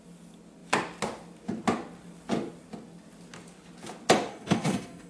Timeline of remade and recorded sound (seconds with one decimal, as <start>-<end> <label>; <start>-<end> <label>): 0.0-4.3 recorded; 4.3-5.1 remade